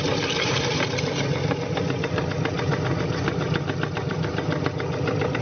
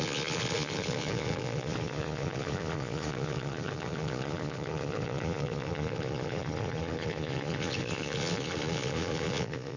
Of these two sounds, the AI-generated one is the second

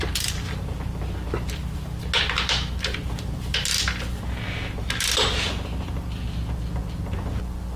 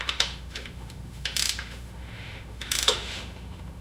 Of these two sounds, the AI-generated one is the second